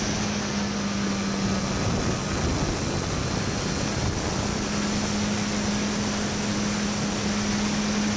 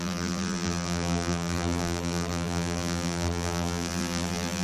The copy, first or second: second